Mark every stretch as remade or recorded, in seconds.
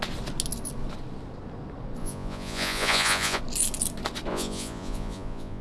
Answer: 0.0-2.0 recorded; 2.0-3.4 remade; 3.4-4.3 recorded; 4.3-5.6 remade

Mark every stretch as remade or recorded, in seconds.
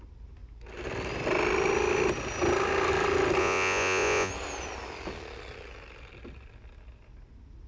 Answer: 0.0-3.4 recorded; 3.4-4.3 remade; 4.3-7.7 recorded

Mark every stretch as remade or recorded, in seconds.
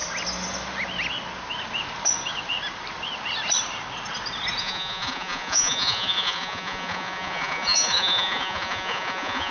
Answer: 0.0-4.6 recorded; 4.6-9.5 remade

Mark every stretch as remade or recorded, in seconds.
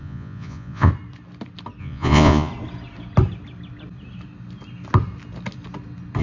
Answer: 0.0-0.9 remade; 0.9-1.8 recorded; 1.8-2.5 remade; 2.5-6.2 recorded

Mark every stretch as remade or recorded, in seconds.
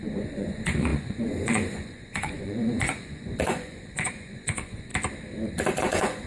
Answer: 0.0-4.9 remade; 4.9-5.8 recorded; 5.8-6.3 remade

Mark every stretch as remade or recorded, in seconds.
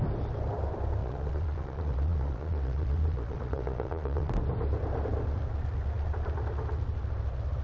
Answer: 0.0-1.0 recorded; 1.0-4.3 remade; 4.3-7.6 recorded